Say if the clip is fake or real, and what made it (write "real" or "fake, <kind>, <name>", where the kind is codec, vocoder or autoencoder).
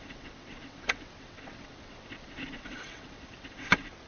fake, vocoder, WaveNeXt